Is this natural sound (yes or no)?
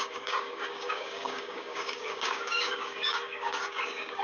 no